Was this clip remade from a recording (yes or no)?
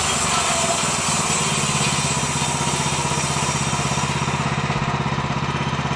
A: no